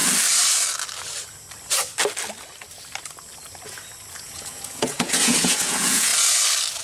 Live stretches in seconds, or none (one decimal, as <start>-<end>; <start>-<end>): 0.0-4.1; 6.1-6.8